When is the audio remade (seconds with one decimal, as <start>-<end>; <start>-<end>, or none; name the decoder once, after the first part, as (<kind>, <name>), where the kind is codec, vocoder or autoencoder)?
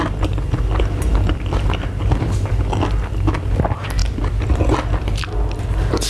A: none